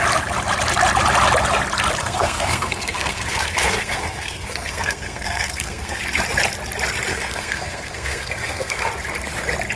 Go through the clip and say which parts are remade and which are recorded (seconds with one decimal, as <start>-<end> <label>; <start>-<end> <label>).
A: 0.0-2.0 recorded; 2.0-6.0 remade; 6.0-7.1 recorded; 7.1-8.9 remade; 8.9-9.8 recorded